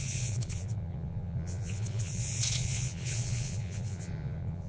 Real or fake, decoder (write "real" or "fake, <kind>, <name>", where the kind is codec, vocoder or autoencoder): fake, vocoder, Vocos